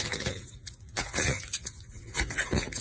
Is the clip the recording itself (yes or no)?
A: no